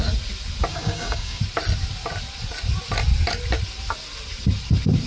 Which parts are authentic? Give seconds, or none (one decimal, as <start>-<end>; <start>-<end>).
0.0-0.7; 1.4-5.1